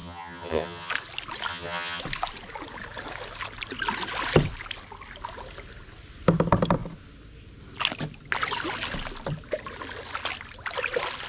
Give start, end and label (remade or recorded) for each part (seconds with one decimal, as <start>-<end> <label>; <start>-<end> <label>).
0.0-0.9 remade; 0.9-1.5 recorded; 1.5-2.0 remade; 2.0-11.3 recorded